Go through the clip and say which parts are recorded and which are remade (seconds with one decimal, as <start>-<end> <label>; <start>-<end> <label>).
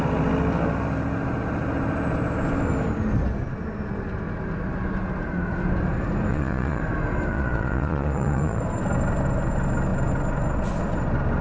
0.0-6.3 recorded; 6.3-6.8 remade; 6.8-7.3 recorded; 7.3-8.6 remade; 8.6-11.4 recorded